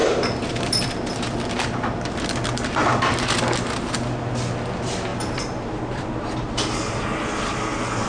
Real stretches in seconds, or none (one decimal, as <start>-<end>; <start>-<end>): 3.1-8.1